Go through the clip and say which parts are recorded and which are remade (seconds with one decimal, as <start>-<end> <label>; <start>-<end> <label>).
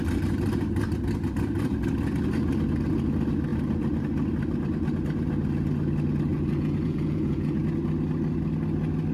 0.0-6.3 recorded; 6.3-7.6 remade; 7.6-9.1 recorded